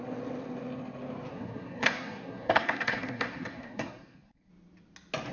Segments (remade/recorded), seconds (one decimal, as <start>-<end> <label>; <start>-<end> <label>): 0.0-1.3 recorded; 1.3-4.5 remade; 4.5-5.3 recorded